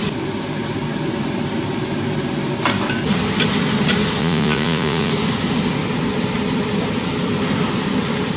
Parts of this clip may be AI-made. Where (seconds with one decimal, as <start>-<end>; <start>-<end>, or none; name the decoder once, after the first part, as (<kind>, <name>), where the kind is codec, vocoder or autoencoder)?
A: 4.2-5.1 (vocoder, Vocos)